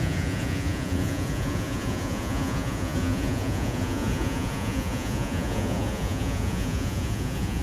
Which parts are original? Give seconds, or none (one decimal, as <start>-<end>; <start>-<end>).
none